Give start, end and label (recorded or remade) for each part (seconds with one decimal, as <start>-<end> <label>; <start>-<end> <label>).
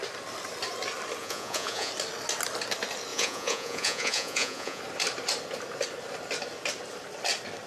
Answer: 0.0-1.2 recorded; 1.2-1.9 remade; 1.9-3.1 recorded; 3.1-4.8 remade; 4.8-7.7 recorded